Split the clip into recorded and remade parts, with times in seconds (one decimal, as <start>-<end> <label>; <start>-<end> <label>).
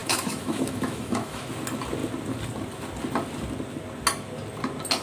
0.0-1.5 remade; 1.5-5.0 recorded